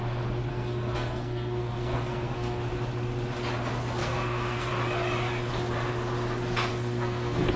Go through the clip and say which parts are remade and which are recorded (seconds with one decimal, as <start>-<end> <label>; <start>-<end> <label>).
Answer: 0.0-0.5 recorded; 0.5-2.7 remade; 2.7-4.0 recorded; 4.0-4.7 remade; 4.7-6.7 recorded; 6.7-7.6 remade